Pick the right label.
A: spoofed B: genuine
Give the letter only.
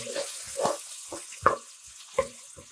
A